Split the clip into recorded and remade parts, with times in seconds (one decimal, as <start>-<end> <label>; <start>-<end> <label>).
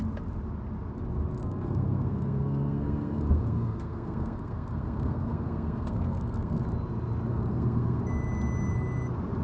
0.0-1.4 recorded; 1.4-6.6 remade; 6.6-7.3 recorded; 7.3-8.0 remade; 8.0-9.4 recorded